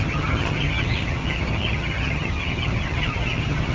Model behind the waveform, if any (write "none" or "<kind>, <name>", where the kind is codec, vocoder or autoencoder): vocoder, HiFi-GAN